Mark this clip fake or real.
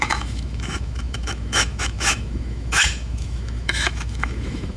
fake